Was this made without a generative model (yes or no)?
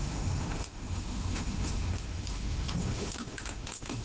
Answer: no